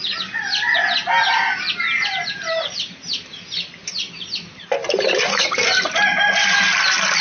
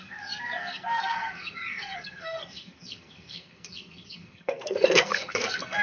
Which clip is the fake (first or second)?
second